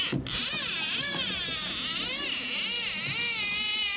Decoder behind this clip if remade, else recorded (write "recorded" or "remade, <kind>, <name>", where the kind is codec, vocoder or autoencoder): recorded